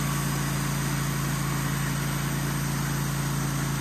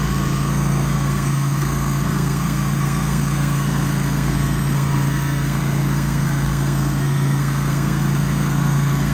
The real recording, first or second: first